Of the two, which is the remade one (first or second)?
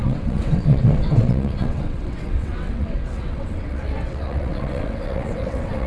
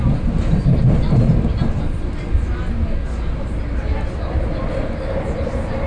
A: first